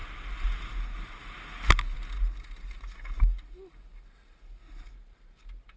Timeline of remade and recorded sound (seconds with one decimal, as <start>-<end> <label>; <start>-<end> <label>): 0.0-5.8 recorded